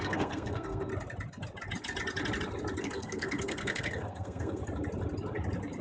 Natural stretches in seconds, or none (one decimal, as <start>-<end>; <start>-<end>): 0.9-2.8; 4.6-5.8